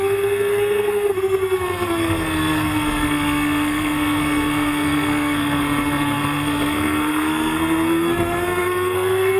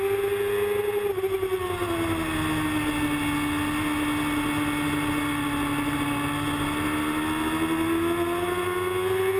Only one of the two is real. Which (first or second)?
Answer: second